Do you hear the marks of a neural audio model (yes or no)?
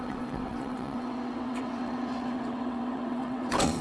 yes